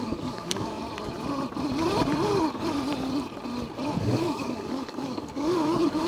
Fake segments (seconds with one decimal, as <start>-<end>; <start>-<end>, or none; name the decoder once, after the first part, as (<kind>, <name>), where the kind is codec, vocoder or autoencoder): 0.0-0.8 (codec, DAC); 4.0-6.1